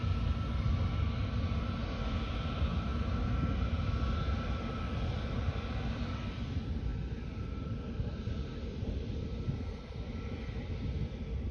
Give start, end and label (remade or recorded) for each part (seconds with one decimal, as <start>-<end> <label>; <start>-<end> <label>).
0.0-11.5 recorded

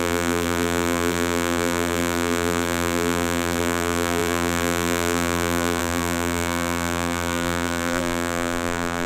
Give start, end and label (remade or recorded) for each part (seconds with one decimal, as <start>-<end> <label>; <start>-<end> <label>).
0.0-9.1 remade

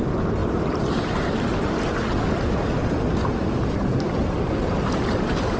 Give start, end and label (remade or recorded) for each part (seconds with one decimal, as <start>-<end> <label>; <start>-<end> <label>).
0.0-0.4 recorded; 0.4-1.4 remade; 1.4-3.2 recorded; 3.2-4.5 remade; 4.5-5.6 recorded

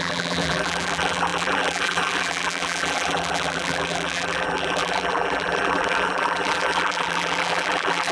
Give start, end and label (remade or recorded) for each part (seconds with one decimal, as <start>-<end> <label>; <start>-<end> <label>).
0.0-8.1 remade

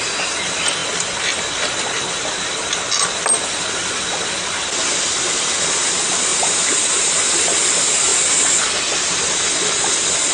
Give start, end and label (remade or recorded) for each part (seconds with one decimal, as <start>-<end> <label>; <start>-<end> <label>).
0.0-6.3 recorded; 6.3-7.4 remade; 7.4-10.3 recorded

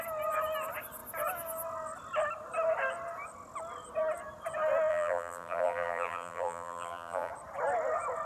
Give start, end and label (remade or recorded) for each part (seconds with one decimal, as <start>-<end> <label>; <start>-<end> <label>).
0.0-4.9 recorded; 4.9-7.3 remade; 7.3-8.3 recorded

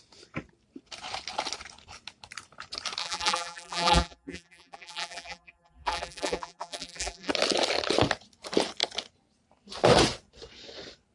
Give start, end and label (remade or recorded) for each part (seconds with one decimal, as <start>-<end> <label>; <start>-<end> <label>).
0.0-3.0 recorded; 3.0-7.3 remade; 7.3-11.1 recorded